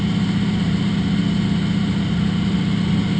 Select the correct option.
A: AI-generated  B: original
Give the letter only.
B